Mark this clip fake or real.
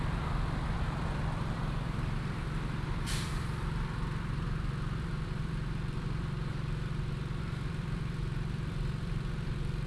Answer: fake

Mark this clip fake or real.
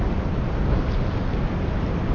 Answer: real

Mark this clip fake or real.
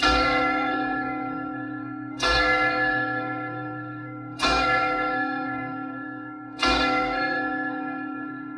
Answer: fake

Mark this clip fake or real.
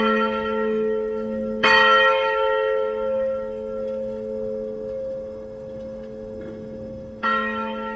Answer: fake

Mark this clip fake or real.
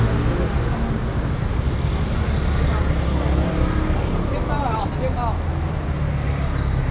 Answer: real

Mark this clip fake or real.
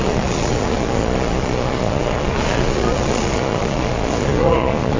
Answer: fake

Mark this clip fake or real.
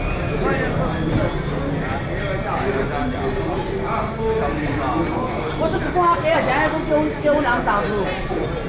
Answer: real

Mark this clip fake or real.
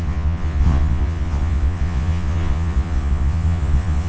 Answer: fake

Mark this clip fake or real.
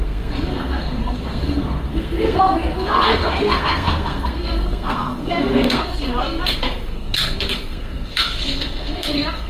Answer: fake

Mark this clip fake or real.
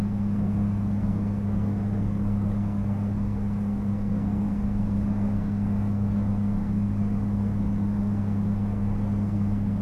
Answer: fake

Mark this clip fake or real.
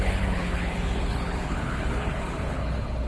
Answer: fake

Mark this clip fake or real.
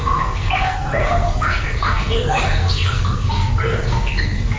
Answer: fake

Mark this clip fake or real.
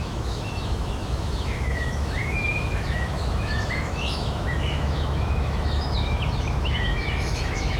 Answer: fake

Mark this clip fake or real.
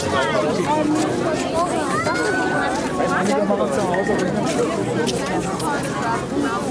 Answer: real